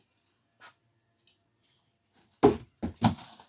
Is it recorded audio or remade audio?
recorded